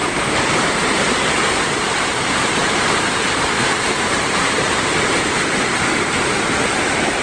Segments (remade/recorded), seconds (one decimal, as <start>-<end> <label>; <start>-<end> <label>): 0.0-2.6 recorded; 2.6-7.2 remade